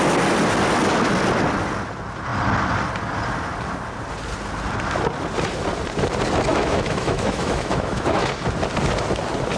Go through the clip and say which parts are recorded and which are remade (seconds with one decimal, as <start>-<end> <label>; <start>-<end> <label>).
0.0-6.5 recorded; 6.5-8.3 remade; 8.3-9.6 recorded